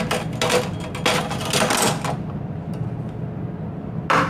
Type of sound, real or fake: real